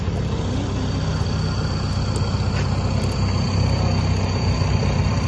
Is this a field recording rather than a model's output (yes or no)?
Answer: yes